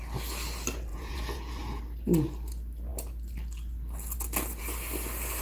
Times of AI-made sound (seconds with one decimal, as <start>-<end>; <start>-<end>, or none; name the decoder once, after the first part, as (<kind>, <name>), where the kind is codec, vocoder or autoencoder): 0.9-1.8 (vocoder, Vocos)